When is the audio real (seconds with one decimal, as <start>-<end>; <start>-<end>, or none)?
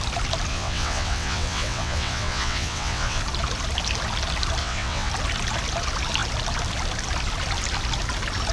0.0-0.5; 3.2-4.6; 5.1-8.5